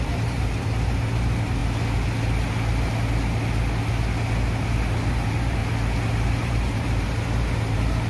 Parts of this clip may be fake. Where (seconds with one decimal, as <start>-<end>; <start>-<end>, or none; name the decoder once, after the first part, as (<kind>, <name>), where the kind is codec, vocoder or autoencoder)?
0.0-1.6 (vocoder, BigVGAN v2); 5.1-5.6; 6.3-8.1